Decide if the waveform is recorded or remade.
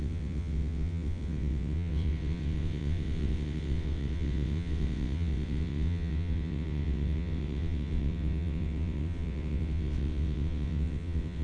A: remade